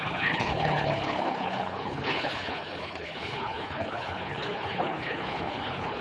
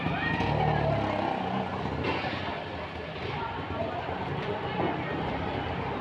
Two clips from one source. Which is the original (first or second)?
second